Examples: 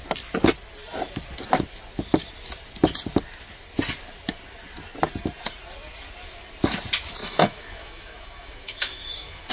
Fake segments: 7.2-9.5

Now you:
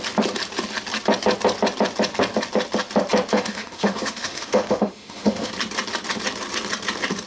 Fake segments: 3.3-5.5

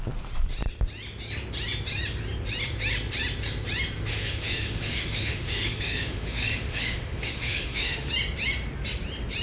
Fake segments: 4.1-8.1